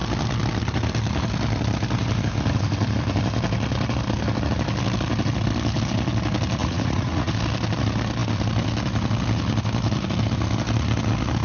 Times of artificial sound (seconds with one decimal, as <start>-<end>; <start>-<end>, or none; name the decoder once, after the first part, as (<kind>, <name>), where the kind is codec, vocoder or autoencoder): 6.6-7.3 (vocoder, Vocos)